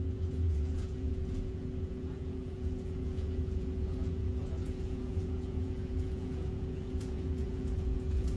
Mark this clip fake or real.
fake